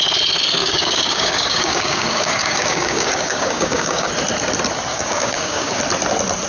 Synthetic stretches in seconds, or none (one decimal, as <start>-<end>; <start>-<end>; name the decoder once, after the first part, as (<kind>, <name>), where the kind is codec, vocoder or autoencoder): 0.6-4.1 (codec, DAC); 4.9-5.8